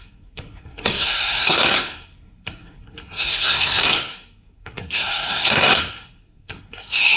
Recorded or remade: remade